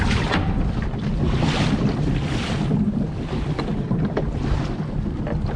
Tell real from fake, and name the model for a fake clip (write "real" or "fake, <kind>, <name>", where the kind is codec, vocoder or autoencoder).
real